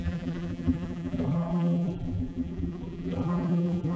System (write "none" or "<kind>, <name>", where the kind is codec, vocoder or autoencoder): vocoder, BigVGAN v2